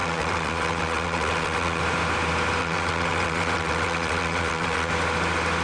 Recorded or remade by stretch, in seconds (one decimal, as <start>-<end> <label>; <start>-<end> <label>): 0.0-1.8 remade; 1.8-2.6 recorded; 2.6-4.9 remade; 4.9-5.6 recorded